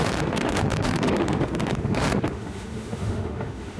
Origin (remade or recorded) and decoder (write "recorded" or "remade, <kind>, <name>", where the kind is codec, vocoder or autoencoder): remade, autoencoder, DAC-VAE